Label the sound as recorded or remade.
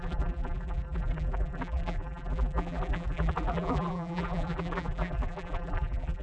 remade